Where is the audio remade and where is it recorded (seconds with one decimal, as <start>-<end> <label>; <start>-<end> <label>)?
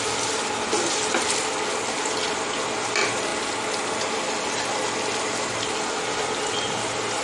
0.0-7.2 recorded